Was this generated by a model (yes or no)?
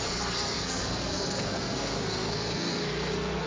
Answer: yes